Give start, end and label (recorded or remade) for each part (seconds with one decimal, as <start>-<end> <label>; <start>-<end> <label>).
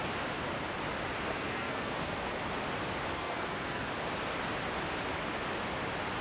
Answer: 0.0-1.3 recorded; 1.3-2.3 remade; 2.3-3.1 recorded; 3.1-3.9 remade; 3.9-6.2 recorded